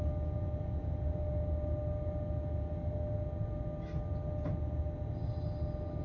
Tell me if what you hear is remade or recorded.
recorded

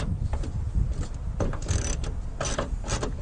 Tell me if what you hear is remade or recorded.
recorded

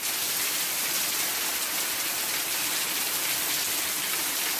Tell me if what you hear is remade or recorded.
recorded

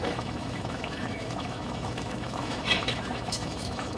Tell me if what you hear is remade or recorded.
remade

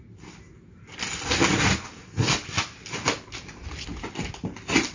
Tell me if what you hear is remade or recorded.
recorded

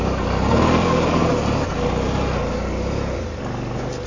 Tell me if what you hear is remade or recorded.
recorded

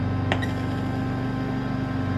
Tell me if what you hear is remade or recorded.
recorded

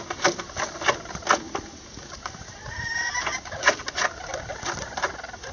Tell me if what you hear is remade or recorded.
recorded